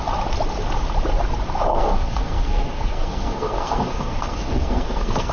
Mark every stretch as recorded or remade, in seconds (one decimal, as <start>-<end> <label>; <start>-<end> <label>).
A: 0.0-1.7 recorded; 1.7-5.3 remade